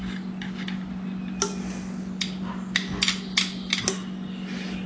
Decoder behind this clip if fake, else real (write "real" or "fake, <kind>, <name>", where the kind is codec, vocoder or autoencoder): real